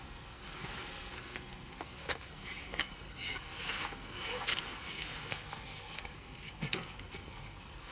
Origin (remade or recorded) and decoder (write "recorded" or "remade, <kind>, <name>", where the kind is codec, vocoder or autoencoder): remade, codec, SNAC